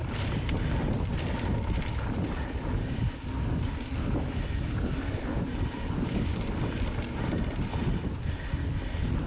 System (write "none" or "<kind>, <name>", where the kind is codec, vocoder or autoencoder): none